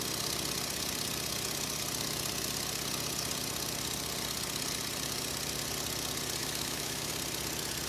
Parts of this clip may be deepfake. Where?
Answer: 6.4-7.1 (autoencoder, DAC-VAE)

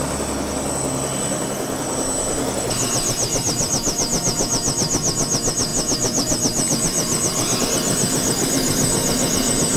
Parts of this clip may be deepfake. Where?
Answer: none

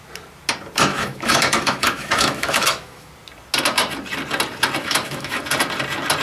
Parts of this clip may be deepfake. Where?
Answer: 0.9-3.1 (autoencoder, DAC-VAE); 4.8-5.4

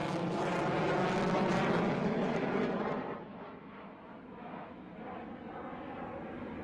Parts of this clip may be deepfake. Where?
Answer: 2.0-2.5 (autoencoder, DAC-VAE); 3.3-4.9

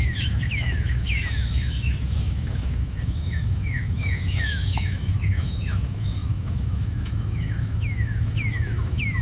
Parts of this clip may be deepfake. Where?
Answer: 0.0-9.2 (autoencoder, DAC-VAE)